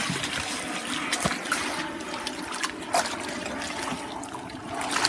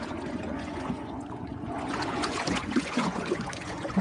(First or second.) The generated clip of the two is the second